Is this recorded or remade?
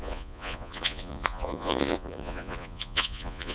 remade